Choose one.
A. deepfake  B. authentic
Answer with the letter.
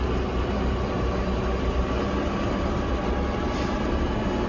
B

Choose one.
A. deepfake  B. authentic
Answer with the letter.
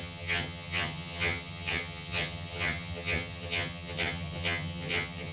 A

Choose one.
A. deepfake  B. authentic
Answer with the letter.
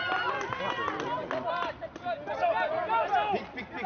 B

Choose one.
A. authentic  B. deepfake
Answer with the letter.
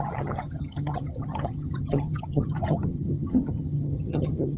B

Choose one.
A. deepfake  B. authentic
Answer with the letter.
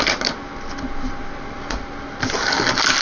B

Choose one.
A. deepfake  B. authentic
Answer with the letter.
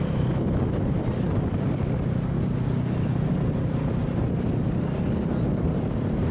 B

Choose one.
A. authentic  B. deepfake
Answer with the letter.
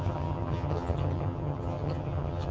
B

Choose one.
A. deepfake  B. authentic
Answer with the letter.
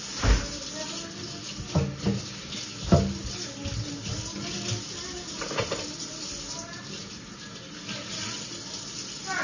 B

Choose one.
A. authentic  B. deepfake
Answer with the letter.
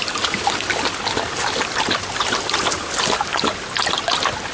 A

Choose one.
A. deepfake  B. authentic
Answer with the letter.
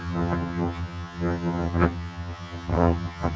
A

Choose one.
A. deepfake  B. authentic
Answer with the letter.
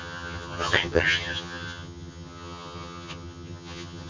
A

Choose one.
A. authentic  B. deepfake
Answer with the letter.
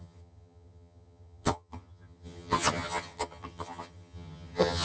B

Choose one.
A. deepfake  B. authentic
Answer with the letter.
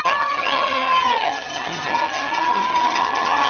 A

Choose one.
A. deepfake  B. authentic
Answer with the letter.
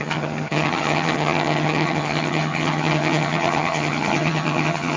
A